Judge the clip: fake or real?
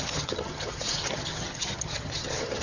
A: fake